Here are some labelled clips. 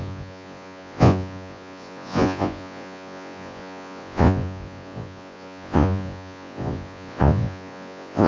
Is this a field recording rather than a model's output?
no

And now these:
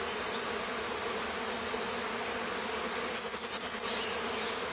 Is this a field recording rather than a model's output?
yes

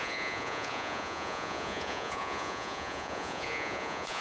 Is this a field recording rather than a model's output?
no